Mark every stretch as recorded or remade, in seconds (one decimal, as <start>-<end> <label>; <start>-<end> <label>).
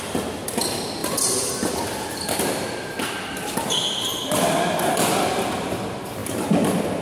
0.0-1.0 recorded; 1.0-3.4 remade; 3.4-4.1 recorded; 4.1-5.1 remade; 5.1-7.0 recorded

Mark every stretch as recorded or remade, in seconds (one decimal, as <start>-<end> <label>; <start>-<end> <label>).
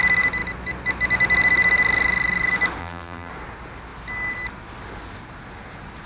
0.0-2.8 recorded; 2.8-3.3 remade; 3.3-6.1 recorded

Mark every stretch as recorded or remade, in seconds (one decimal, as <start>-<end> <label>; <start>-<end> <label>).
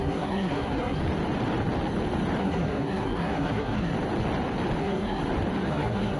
0.0-1.0 remade; 1.0-2.4 recorded; 2.4-3.9 remade; 3.9-4.8 recorded; 4.8-5.2 remade; 5.2-5.7 recorded; 5.7-6.2 remade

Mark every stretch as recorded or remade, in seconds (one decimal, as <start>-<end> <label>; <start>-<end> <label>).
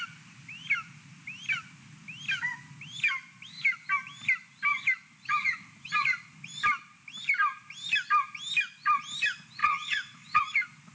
0.0-9.6 recorded; 9.6-10.4 remade; 10.4-10.9 recorded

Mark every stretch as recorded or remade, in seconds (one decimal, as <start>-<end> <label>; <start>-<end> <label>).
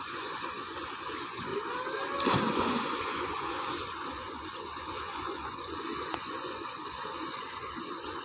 0.0-1.5 remade; 1.5-2.4 recorded; 2.4-8.2 remade